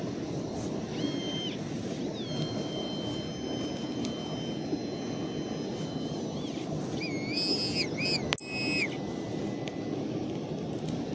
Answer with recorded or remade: recorded